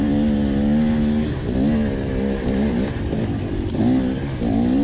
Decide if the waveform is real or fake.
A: real